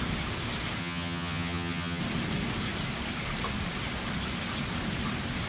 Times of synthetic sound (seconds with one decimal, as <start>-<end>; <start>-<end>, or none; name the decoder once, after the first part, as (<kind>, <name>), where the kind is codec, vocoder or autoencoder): 0.8-2.0 (vocoder, HiFi-GAN)